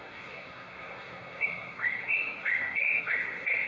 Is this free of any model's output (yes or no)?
no